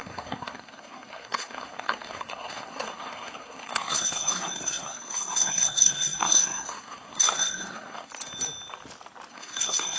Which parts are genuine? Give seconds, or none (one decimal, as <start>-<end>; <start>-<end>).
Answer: 8.1-9.3